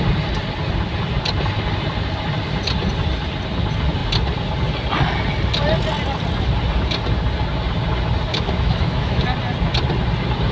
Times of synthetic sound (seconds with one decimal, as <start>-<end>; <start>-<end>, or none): 8.3-9.2